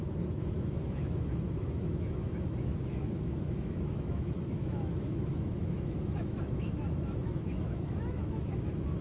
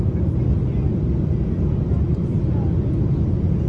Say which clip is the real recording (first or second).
second